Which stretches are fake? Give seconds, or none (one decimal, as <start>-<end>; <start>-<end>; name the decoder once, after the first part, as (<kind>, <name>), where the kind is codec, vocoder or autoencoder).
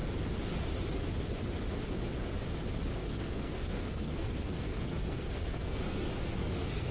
3.0-6.9 (codec, SNAC)